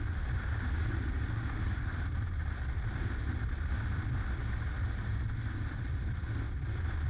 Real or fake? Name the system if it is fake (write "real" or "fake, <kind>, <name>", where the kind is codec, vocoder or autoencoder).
real